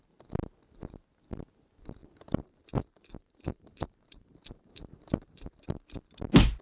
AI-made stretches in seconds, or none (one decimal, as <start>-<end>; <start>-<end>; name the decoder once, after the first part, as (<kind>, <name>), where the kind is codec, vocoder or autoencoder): 2.0-6.0 (vocoder, BigVGAN v2)